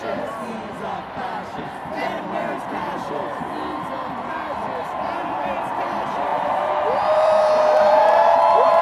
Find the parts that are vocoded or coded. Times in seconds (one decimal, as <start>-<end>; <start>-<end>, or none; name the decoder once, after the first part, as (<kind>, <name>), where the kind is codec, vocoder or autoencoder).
1.5-2.2 (vocoder, BigVGAN v2); 6.3-8.8